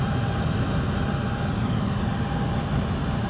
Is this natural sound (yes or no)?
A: yes